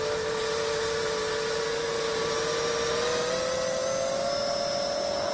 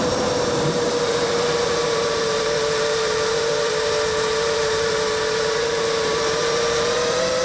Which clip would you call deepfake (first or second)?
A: second